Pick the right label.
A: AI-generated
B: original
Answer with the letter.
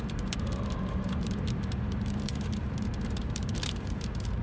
A